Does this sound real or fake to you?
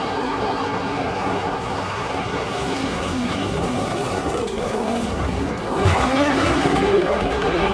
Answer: fake